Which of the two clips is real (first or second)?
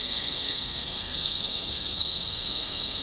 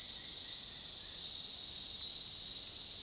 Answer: second